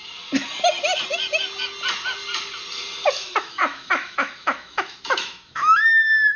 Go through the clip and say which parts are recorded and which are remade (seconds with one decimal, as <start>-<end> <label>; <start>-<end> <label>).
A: 0.0-3.2 recorded; 3.2-6.4 remade